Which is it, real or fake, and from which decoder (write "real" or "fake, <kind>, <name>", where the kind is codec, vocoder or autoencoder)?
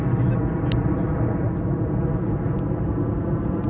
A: real